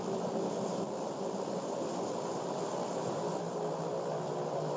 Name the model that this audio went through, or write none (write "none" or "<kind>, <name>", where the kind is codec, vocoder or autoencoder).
none